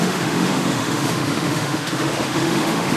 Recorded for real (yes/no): no